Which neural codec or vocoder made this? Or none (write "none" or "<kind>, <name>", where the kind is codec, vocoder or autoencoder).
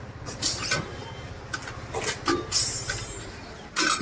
none